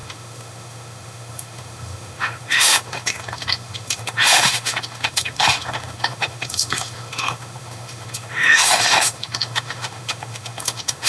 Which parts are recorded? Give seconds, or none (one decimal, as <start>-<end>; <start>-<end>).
none